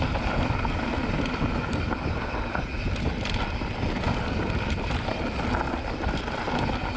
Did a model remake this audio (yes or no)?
no